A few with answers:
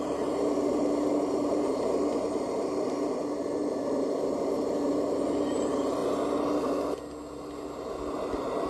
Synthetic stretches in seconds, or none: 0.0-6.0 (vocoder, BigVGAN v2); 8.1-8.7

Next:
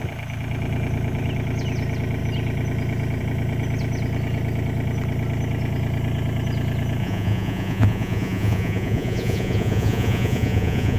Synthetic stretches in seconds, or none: 7.0-11.0 (vocoder, Vocos)

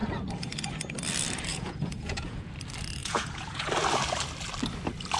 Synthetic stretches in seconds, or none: 1.5-2.5 (vocoder, Vocos); 3.0-3.7

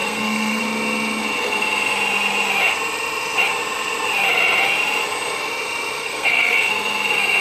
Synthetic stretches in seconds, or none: 0.0-0.6 (codec, SNAC); 6.0-6.7

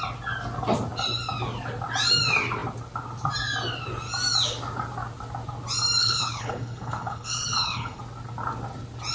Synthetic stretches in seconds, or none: 6.0-8.0 (codec, HILCodec)

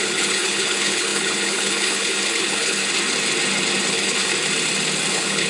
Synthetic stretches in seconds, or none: 0.0-2.8 (codec, HILCodec); 3.9-4.3; 5.1-5.5